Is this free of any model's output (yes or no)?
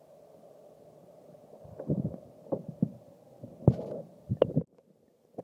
yes